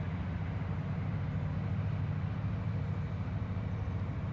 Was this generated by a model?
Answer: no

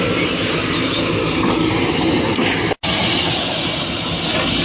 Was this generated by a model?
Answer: no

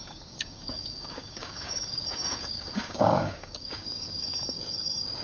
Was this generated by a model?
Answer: yes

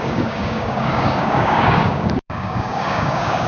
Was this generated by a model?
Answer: yes